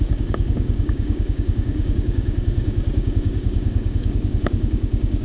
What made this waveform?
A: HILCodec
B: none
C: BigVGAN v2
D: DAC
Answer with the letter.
D